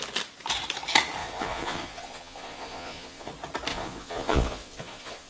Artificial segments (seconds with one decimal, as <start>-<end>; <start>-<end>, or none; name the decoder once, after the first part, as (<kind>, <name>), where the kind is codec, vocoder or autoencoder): 1.2-3.3 (vocoder, Vocos); 3.7-5.3